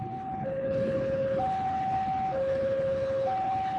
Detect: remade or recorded remade